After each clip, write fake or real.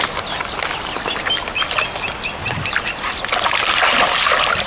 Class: real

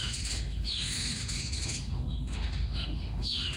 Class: fake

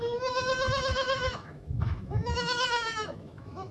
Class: fake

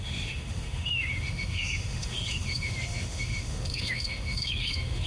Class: fake